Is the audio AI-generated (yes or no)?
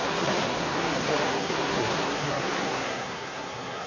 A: yes